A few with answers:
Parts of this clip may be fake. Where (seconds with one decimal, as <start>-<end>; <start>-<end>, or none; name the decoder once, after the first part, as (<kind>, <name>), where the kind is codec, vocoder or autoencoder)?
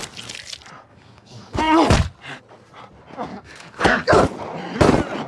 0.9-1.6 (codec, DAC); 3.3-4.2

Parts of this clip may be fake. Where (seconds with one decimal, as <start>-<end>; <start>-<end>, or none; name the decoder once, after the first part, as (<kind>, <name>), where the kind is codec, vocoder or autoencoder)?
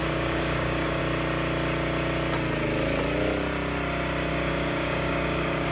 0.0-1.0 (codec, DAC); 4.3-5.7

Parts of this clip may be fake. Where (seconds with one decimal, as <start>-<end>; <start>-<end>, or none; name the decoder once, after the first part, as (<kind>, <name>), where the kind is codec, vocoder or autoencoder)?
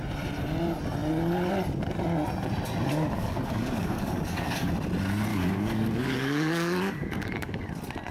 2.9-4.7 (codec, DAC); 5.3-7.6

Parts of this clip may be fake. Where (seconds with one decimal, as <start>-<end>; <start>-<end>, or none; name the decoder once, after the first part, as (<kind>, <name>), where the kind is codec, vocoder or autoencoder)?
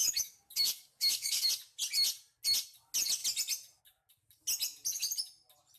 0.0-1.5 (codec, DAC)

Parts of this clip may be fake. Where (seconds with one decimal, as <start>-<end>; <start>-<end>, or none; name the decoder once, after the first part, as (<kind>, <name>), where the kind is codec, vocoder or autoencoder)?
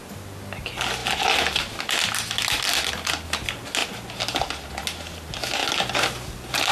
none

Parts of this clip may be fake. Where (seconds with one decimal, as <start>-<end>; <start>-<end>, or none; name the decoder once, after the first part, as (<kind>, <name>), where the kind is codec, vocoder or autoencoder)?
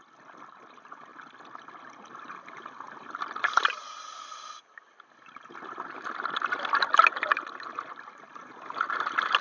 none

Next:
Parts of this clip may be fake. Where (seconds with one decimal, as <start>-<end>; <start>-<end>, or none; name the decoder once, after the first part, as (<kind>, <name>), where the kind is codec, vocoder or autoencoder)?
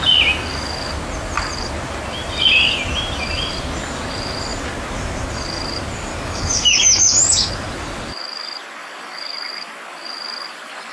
6.1-7.5 (codec, DAC)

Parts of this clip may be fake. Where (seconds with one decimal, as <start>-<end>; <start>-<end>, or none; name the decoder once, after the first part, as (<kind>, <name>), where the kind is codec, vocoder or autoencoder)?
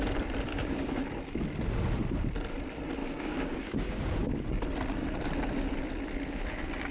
0.5-1.0 (codec, DAC); 3.0-4.6